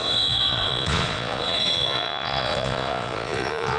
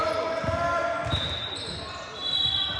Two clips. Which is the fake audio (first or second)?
first